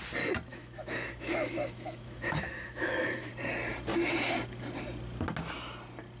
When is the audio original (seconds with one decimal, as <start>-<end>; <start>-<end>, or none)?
0.0-0.5; 3.3-6.2